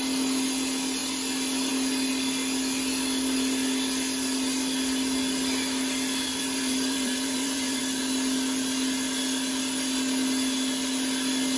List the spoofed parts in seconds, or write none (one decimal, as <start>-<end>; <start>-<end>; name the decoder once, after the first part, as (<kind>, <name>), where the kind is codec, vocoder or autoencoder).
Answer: 6.3-7.8 (vocoder, BigVGAN v2)